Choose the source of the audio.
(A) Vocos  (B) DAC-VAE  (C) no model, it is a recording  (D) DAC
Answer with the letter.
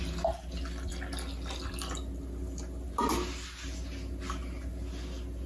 C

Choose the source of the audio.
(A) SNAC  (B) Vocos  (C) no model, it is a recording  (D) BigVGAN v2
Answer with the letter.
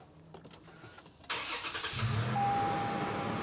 C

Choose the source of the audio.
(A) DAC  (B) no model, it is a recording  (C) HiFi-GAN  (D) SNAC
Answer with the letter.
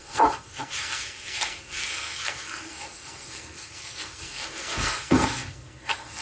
D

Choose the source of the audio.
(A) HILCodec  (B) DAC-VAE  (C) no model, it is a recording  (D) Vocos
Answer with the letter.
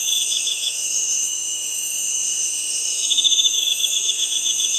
B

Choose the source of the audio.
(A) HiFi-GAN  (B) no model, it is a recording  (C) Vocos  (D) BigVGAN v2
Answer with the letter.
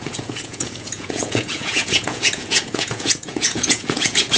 C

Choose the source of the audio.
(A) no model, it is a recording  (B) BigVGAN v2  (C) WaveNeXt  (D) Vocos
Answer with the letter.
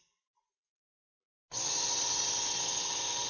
A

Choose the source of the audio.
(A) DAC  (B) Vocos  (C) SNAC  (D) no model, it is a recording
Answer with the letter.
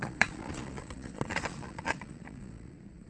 B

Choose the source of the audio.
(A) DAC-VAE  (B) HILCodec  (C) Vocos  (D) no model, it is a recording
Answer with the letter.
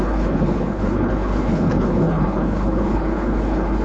B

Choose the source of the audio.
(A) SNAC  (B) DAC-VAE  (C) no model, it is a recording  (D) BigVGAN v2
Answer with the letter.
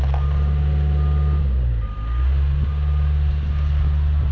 C